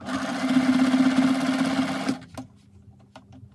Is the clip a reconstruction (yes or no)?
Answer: no